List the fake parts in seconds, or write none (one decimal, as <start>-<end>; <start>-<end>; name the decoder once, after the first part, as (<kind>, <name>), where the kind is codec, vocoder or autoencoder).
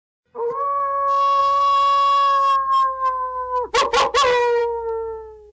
1.4-3.7 (autoencoder, DAC-VAE); 4.6-5.5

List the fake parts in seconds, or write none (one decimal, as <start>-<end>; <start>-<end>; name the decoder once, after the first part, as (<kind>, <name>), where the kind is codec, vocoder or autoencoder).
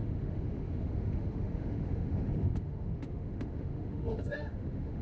0.0-5.0 (autoencoder, DAC-VAE)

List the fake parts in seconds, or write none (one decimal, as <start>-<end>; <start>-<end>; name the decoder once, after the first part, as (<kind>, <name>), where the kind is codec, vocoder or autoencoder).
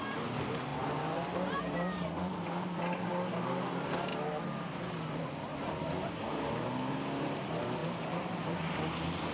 0.7-2.2 (vocoder, BigVGAN v2); 5.2-6.5; 7.8-8.6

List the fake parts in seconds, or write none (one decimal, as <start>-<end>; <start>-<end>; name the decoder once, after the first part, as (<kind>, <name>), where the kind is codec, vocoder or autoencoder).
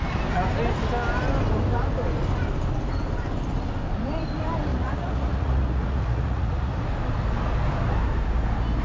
4.7-6.7 (vocoder, Vocos)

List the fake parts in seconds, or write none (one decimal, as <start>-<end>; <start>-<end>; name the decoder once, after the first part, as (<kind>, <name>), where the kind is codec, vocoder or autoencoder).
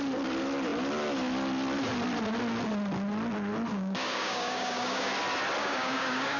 3.7-5.1 (codec, DAC); 5.6-6.4